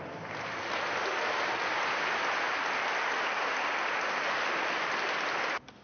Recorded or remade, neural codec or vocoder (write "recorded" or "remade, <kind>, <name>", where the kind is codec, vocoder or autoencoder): recorded